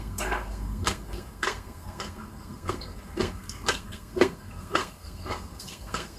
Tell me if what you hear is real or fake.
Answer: fake